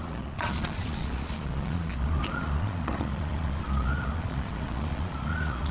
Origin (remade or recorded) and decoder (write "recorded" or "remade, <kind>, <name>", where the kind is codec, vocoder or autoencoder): remade, vocoder, Vocos